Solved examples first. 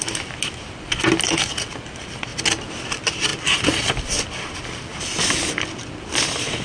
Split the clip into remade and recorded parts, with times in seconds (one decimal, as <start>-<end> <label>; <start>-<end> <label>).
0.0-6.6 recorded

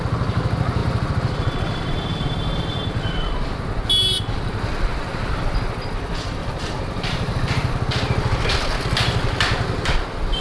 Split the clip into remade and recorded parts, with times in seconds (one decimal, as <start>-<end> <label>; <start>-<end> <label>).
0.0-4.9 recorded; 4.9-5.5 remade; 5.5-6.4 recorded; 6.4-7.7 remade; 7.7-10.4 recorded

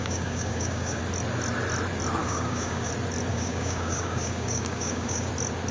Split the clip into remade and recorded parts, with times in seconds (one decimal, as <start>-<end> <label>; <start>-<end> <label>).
0.0-1.0 remade; 1.0-2.2 recorded; 2.2-2.9 remade; 2.9-3.3 recorded; 3.3-5.3 remade; 5.3-5.7 recorded

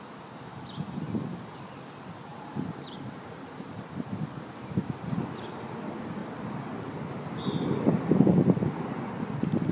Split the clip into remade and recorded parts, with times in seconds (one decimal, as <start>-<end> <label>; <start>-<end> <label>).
0.0-0.5 recorded; 0.5-1.5 remade; 1.5-2.3 recorded; 2.3-4.2 remade; 4.2-9.7 recorded